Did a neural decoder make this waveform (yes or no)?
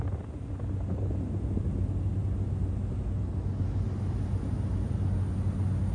no